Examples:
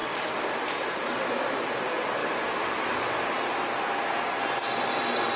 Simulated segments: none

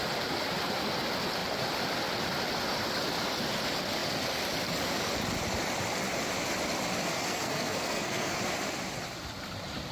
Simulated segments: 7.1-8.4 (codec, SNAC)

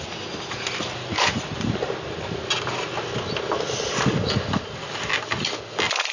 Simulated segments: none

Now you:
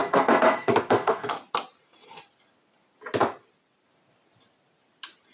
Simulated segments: 0.0-1.3 (codec, SNAC)

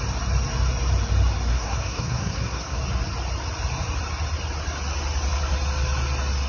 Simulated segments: 1.5-2.8 (codec, SNAC)

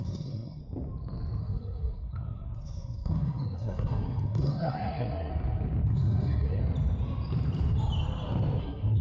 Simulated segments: 0.0-0.6 (codec, SNAC); 1.4-5.3; 5.9-6.6; 8.6-9.0